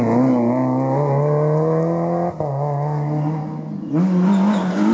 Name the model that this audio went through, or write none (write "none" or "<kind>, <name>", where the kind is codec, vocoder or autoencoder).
none